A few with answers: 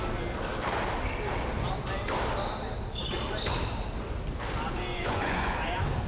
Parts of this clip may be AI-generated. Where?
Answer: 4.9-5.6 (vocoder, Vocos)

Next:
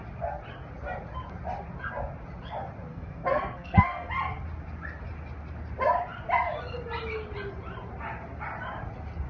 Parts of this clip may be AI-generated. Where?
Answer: 2.9-4.1 (codec, SNAC)

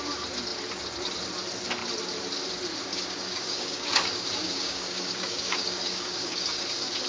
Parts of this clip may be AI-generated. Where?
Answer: 2.9-6.6 (codec, DAC)

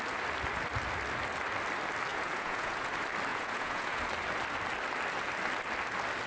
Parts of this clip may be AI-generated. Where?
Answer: 2.1-2.9 (vocoder, Vocos); 3.3-4.0